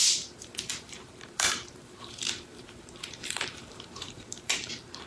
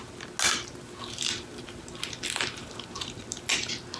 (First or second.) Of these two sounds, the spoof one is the first